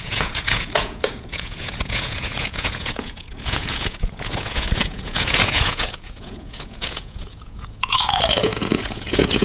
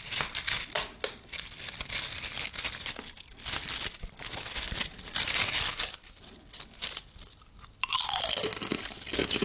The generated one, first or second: first